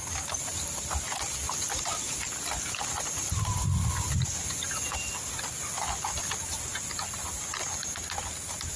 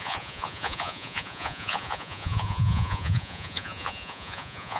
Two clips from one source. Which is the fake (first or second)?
second